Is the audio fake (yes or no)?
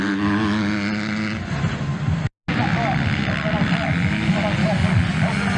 no